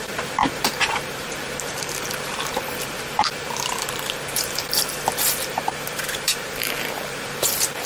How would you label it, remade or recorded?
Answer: remade